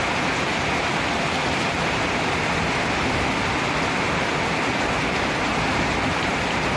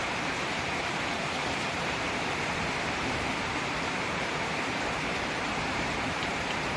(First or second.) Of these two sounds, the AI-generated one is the second